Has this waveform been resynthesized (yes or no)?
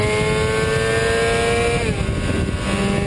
no